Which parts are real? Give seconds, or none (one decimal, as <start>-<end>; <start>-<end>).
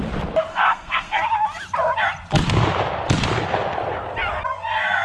0.0-0.5; 1.2-5.0